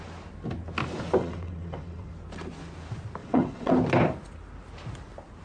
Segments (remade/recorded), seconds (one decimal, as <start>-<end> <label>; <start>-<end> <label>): 0.0-1.2 recorded; 1.2-2.1 remade; 2.1-3.2 recorded; 3.2-3.7 remade; 3.7-5.4 recorded